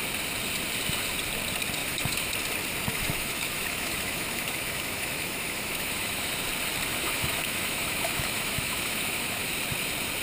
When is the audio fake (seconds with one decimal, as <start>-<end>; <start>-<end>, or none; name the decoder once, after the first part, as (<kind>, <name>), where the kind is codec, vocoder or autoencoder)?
1.8-2.3 (autoencoder, DAC-VAE); 2.9-6.3; 6.9-9.5